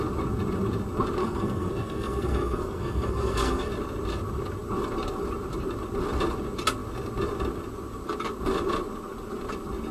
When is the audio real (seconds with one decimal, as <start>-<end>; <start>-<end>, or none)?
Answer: 0.0-1.2; 3.7-9.9